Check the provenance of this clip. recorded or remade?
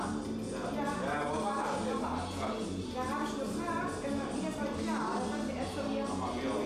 recorded